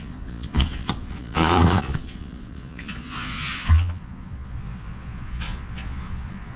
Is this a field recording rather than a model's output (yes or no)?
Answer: no